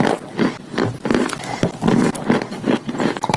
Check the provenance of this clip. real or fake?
real